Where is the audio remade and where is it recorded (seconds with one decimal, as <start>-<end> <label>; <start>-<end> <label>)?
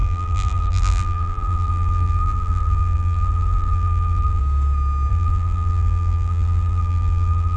0.0-4.4 remade; 4.4-5.1 recorded; 5.1-7.6 remade